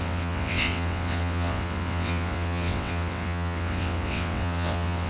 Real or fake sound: fake